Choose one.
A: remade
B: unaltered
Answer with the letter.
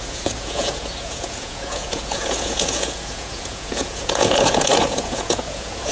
A